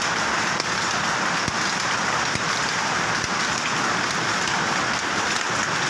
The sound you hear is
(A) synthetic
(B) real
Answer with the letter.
B